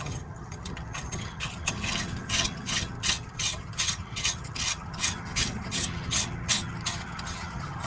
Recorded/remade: remade